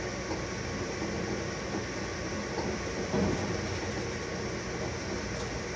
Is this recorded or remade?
recorded